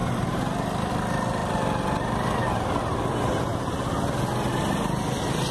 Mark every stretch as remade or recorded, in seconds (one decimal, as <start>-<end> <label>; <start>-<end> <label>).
0.0-5.5 recorded